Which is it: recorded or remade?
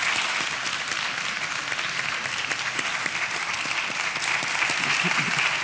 recorded